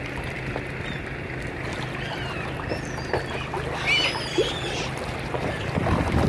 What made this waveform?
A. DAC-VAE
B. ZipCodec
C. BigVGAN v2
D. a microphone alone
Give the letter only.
D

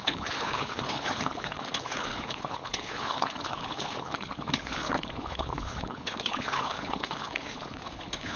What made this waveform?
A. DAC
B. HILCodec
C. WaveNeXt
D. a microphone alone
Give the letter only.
B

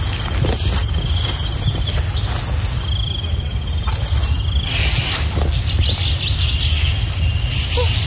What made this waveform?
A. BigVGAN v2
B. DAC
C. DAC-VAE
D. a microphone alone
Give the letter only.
D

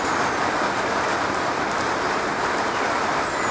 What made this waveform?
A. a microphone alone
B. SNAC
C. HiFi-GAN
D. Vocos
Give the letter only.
A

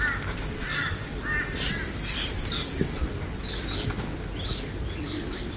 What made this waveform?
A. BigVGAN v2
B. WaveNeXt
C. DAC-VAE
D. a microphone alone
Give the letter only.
D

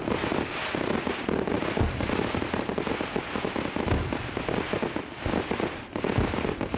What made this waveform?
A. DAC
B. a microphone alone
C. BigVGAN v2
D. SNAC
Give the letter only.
B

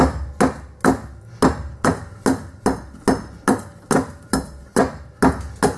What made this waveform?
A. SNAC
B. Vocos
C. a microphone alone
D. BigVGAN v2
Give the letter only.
C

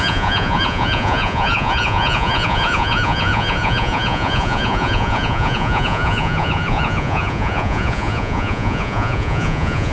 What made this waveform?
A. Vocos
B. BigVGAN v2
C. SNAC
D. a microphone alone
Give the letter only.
A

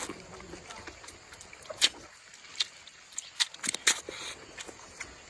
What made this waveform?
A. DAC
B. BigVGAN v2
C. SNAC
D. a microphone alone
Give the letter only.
D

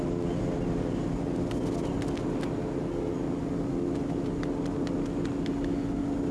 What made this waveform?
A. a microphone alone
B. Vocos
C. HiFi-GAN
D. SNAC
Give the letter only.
A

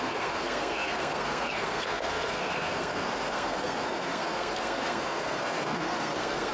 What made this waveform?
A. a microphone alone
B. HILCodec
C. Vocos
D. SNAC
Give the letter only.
D